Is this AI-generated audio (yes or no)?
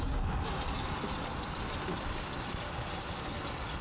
no